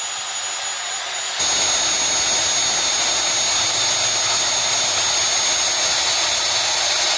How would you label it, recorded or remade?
recorded